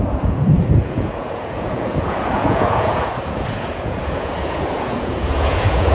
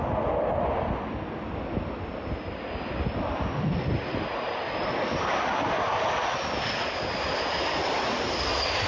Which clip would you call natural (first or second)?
second